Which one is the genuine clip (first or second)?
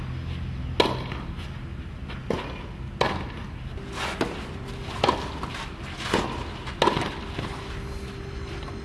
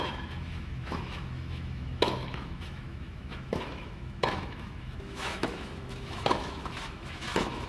first